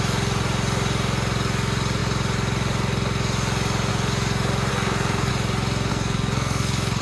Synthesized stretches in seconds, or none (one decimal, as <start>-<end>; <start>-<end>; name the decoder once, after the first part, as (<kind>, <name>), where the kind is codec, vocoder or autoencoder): 4.7-5.3 (codec, SNAC); 5.9-7.0